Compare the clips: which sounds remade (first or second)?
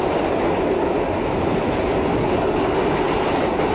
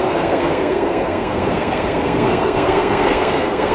second